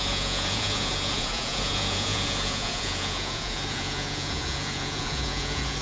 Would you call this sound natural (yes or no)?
no